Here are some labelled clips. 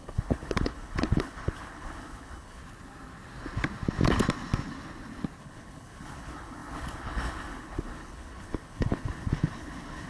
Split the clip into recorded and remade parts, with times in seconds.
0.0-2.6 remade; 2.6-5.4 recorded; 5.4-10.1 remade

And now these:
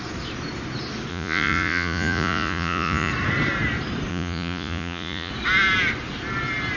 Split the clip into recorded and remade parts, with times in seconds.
0.0-1.1 recorded; 1.1-3.1 remade; 3.1-4.1 recorded; 4.1-5.3 remade; 5.3-6.8 recorded

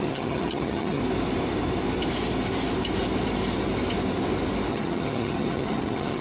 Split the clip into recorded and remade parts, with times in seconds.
0.0-1.0 remade; 1.0-4.7 recorded; 4.7-6.2 remade

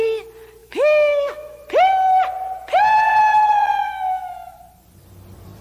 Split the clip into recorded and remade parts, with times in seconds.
0.0-0.6 recorded; 0.6-1.6 remade; 1.6-3.8 recorded; 3.8-4.3 remade; 4.3-5.6 recorded

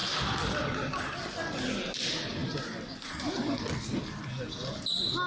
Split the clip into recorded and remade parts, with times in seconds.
0.0-5.3 recorded

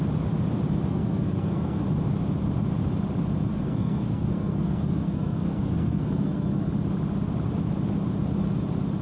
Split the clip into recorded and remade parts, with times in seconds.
0.0-0.9 recorded; 0.9-1.8 remade; 1.8-3.5 recorded; 3.5-6.7 remade; 6.7-9.0 recorded